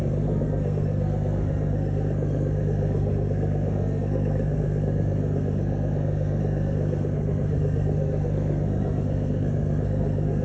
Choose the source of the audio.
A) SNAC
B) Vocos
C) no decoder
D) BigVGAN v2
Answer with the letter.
A